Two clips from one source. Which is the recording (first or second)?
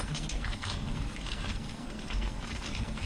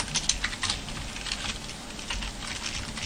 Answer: second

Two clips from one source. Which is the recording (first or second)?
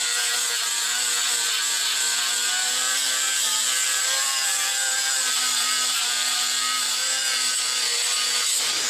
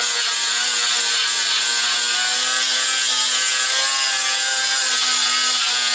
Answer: second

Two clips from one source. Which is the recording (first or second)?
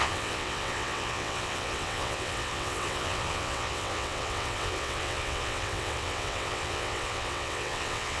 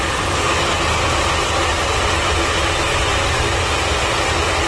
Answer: second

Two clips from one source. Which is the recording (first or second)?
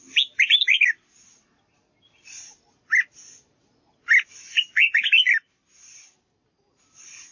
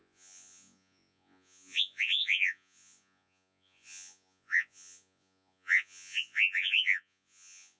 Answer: first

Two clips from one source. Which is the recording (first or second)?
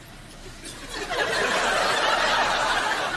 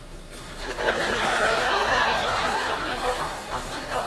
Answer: first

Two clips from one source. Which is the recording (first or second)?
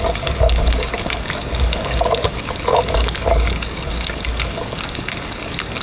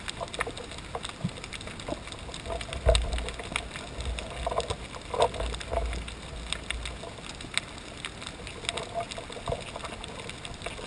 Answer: second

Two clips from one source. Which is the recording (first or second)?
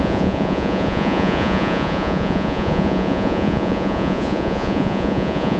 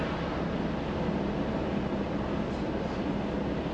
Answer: second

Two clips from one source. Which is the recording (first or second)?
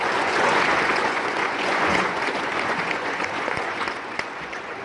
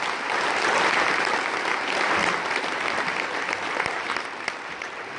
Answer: second